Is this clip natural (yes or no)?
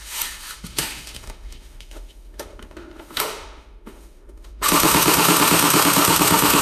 no